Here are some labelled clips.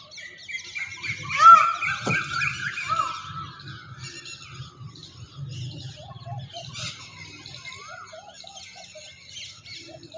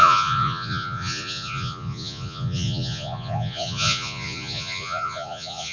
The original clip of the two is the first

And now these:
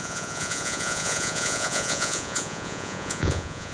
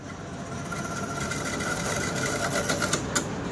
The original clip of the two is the second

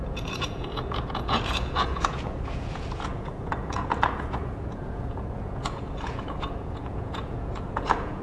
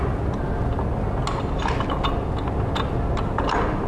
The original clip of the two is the second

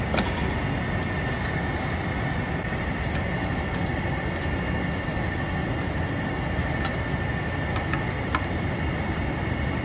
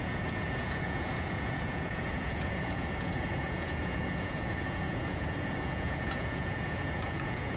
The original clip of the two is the first